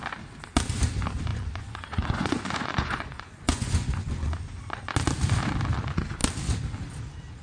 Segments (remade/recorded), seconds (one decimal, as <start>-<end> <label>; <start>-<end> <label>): 0.0-1.3 recorded; 1.3-4.6 remade; 4.6-7.4 recorded